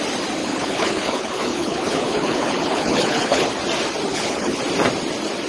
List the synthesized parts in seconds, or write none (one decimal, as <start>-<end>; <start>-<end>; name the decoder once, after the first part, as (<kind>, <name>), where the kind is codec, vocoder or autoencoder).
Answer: 0.4-3.5 (codec, HILCodec); 4.1-4.6